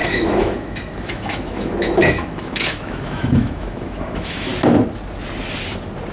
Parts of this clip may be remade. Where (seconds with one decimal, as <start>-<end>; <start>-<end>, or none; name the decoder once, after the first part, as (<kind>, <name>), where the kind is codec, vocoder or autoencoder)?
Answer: 0.0-4.5 (autoencoder, DAC-VAE)